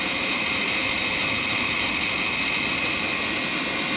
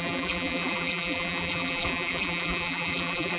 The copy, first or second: second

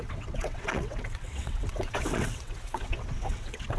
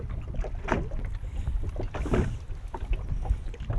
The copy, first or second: first